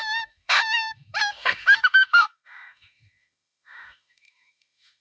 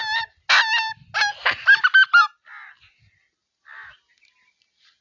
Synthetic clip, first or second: first